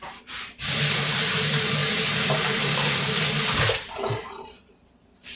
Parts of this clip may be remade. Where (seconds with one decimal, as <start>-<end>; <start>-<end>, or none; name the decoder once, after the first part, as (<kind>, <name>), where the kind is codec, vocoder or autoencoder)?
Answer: 0.0-5.4 (vocoder, BigVGAN v2)